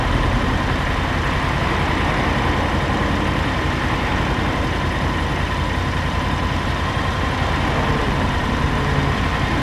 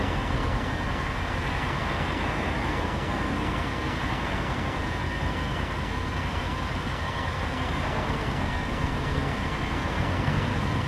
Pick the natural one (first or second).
first